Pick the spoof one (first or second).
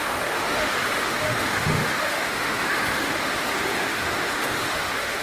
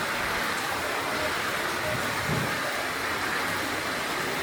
first